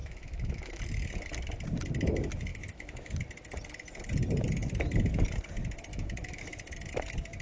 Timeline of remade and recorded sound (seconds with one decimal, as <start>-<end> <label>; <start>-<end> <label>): 0.0-0.8 remade; 0.8-2.5 recorded; 2.5-3.1 remade; 3.1-5.9 recorded; 5.9-6.4 remade; 6.4-7.4 recorded